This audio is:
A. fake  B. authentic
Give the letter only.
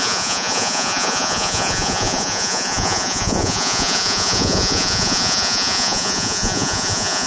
A